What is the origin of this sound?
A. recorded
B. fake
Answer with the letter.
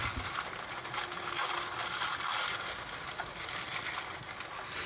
A